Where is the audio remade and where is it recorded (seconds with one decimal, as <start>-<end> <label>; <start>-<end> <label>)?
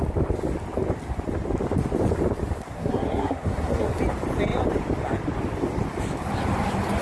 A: 0.0-2.7 recorded; 2.7-4.0 remade; 4.0-7.0 recorded